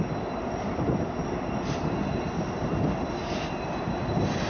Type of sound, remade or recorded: remade